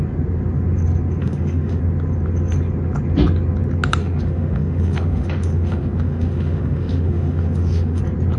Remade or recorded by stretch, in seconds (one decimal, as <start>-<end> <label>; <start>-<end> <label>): 0.0-1.2 recorded; 1.2-1.8 remade; 1.8-4.0 recorded; 4.0-8.0 remade; 8.0-8.4 recorded